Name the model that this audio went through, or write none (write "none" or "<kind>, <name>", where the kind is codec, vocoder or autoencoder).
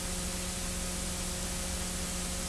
none